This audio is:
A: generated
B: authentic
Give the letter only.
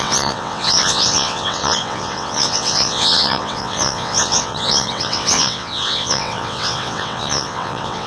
A